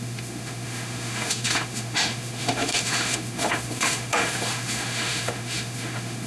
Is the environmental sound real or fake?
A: fake